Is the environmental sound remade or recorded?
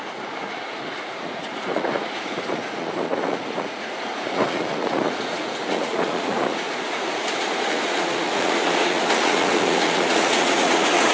remade